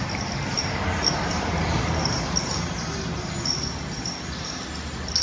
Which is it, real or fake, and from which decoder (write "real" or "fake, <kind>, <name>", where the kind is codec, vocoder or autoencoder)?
real